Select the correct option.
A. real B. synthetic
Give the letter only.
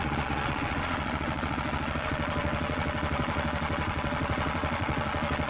B